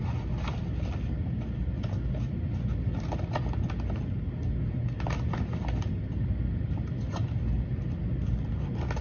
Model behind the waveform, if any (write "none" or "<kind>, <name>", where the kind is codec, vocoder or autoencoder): none